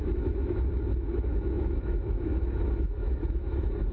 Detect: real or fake fake